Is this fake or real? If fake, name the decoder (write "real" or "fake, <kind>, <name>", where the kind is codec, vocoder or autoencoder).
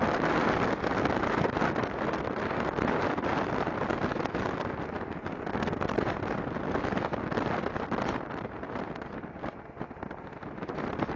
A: real